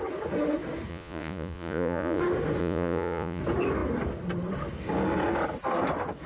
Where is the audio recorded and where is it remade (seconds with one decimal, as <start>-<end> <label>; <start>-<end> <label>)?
0.0-0.9 recorded; 0.9-2.2 remade; 2.2-2.6 recorded; 2.6-3.4 remade; 3.4-6.3 recorded